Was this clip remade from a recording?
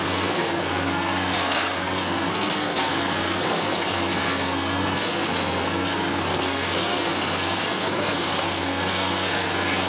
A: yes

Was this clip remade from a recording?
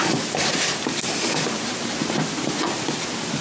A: no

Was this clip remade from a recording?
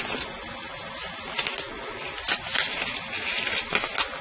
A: no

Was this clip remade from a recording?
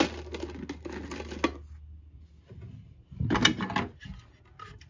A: no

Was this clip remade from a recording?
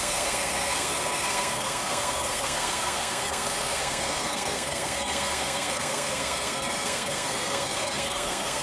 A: yes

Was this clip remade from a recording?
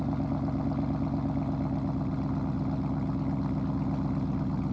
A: no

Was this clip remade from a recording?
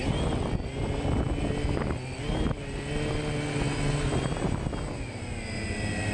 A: no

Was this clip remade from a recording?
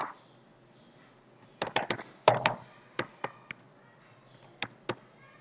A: no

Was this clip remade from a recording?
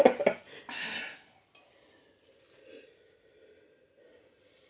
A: no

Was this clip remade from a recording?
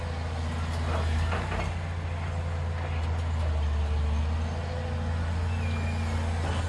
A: no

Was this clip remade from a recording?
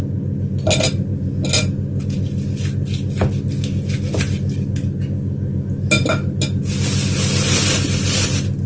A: no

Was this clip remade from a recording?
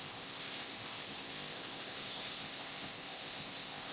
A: yes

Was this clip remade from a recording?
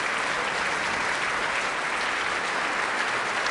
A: no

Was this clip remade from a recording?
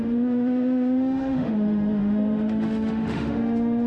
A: yes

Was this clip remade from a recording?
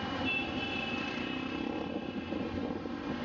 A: no